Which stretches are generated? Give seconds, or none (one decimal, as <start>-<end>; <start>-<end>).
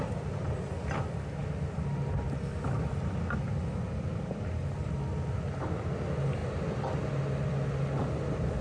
none